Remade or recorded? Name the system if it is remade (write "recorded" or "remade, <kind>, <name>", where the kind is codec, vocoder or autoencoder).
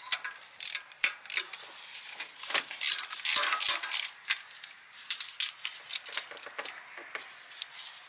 recorded